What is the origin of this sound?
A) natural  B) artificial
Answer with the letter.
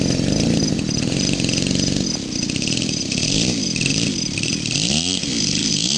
A